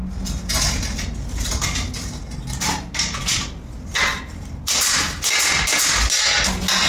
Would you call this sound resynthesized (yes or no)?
no